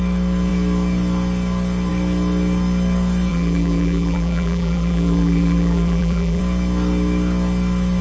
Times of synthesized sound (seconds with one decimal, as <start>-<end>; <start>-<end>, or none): 3.3-6.4